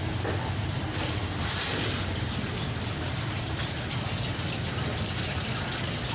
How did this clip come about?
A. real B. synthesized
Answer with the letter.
B